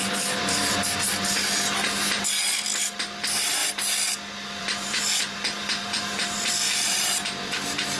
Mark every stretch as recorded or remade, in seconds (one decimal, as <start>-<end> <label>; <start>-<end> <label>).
0.0-1.4 remade; 1.4-2.5 recorded; 2.5-3.6 remade; 3.6-4.6 recorded; 4.6-8.0 remade